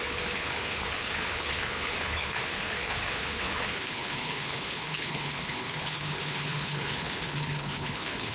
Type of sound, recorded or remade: remade